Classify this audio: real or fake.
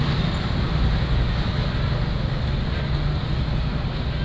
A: real